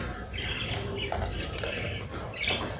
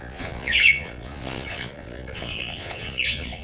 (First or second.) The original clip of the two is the first